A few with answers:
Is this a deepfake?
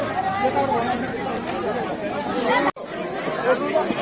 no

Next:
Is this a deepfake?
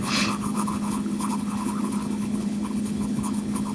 yes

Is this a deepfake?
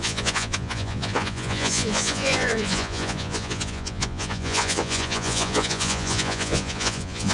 yes